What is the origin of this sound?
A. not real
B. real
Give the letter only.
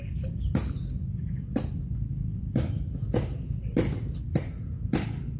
B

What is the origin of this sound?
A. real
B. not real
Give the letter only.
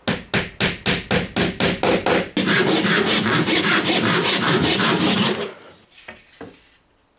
A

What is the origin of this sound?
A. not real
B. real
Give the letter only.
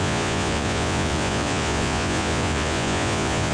A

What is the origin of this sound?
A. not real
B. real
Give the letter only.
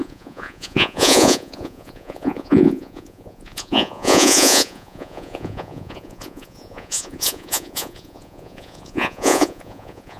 A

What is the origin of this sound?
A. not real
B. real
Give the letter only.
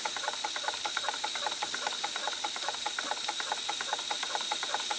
B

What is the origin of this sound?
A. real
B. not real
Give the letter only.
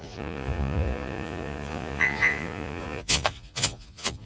B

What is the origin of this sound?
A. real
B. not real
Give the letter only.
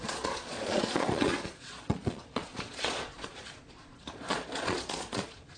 B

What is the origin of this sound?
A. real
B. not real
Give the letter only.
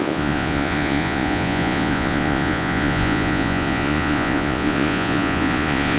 B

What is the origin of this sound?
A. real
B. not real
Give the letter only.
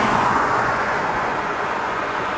B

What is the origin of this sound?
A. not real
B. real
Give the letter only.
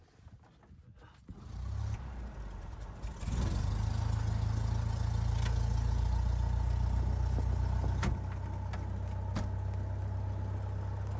B